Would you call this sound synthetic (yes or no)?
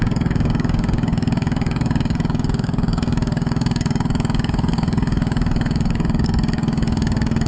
yes